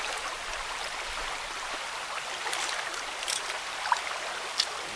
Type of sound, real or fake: real